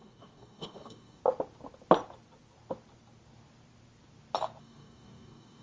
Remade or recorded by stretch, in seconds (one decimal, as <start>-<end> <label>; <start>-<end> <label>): 0.0-1.2 remade; 1.2-4.6 recorded; 4.6-5.6 remade